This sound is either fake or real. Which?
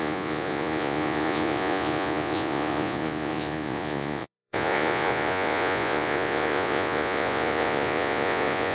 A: fake